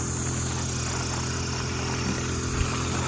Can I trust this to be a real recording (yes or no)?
yes